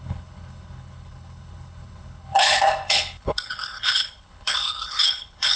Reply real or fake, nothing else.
fake